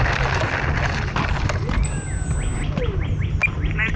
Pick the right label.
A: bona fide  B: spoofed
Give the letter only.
A